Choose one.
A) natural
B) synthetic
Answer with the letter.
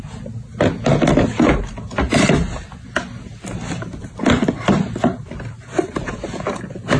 A